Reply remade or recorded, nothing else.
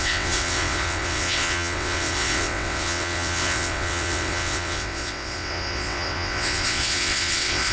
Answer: remade